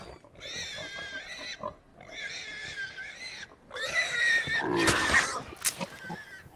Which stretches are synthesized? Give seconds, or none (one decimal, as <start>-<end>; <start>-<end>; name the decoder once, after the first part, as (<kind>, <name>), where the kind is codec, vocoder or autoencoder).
none